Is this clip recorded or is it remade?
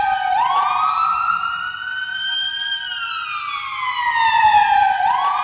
recorded